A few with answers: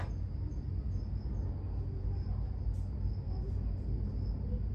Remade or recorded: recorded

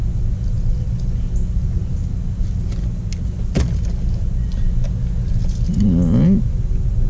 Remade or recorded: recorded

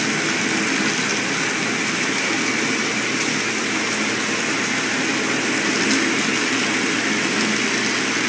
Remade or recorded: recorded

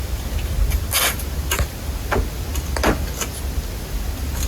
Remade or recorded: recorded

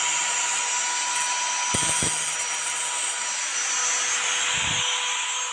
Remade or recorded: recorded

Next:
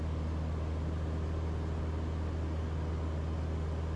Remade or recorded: recorded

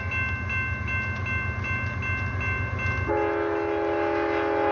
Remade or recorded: recorded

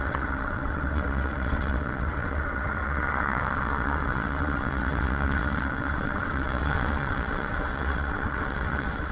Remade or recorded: remade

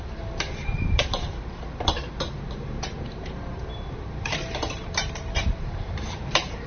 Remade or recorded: remade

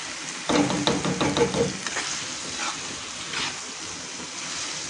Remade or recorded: remade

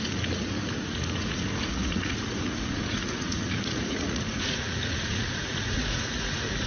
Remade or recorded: remade